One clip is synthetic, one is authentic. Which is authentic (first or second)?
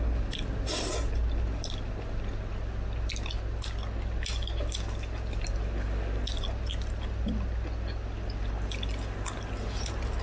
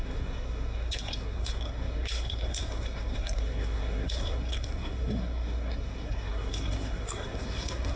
first